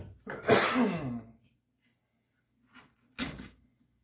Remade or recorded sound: recorded